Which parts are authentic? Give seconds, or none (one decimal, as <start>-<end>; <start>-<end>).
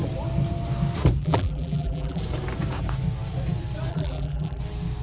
0.0-1.2; 2.2-3.9; 4.6-5.0